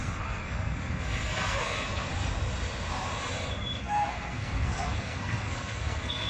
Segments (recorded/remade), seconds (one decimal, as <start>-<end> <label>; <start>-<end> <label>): 0.0-2.1 remade; 2.1-3.8 recorded; 3.8-6.3 remade